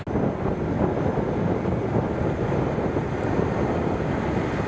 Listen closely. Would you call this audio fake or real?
real